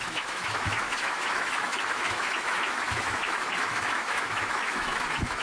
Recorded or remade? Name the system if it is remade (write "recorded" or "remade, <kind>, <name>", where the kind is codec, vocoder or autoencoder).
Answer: remade, autoencoder, DAC-VAE